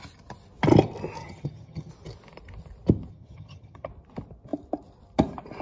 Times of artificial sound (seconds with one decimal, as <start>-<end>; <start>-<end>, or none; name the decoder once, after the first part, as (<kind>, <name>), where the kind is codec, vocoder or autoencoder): 1.2-1.9 (vocoder, HiFi-GAN); 3.1-3.9